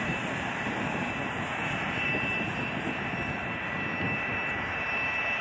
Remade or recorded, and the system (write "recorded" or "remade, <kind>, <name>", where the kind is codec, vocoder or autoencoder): remade, vocoder, BigVGAN v2